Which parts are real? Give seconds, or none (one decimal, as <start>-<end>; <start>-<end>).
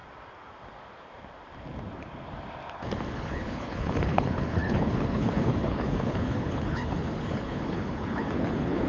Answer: 0.0-3.1